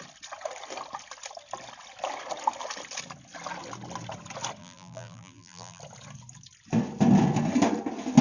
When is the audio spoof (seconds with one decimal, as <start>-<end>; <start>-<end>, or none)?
4.6-5.8